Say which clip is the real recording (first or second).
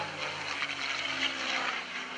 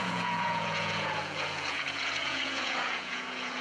first